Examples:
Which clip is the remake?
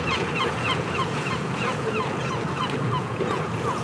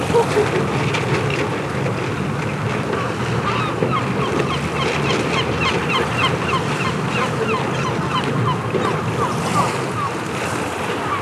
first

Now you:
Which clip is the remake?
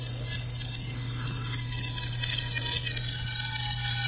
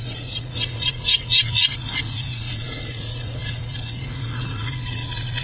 second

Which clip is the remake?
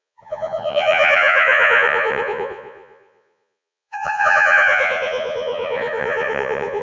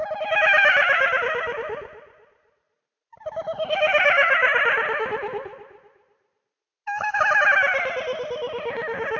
first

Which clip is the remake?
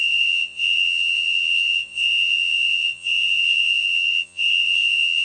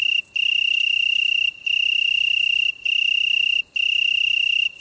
first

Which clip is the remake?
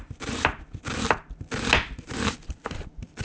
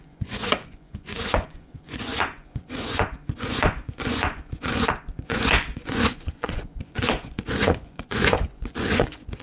second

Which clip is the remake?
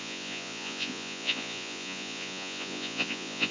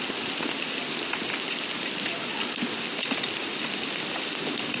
first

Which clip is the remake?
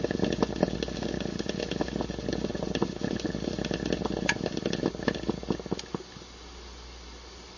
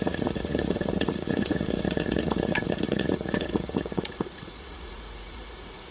second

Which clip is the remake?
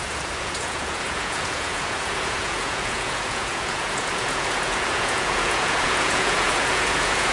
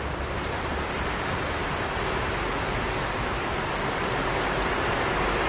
first